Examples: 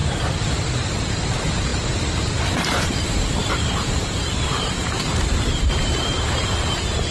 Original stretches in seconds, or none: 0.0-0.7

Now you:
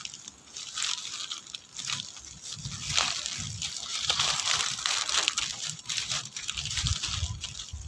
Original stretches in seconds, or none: 0.0-3.9; 4.6-5.5; 6.9-7.9

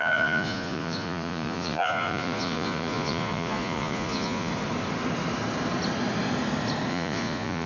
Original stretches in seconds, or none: 4.5-6.9